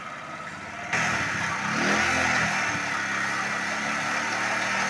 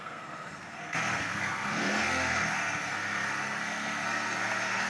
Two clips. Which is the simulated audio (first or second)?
second